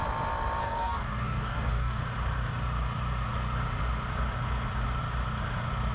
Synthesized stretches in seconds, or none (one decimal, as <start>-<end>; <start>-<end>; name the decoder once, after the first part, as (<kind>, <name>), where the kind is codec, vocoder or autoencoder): 0.6-2.0 (codec, DAC)